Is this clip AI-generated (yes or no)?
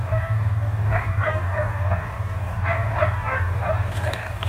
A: yes